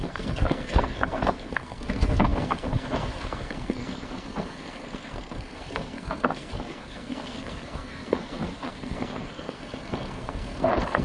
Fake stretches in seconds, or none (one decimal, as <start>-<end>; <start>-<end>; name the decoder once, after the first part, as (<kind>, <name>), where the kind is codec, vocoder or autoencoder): 0.0-11.0 (codec, SNAC)